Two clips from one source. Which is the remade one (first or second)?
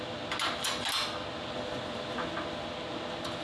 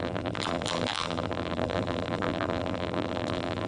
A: second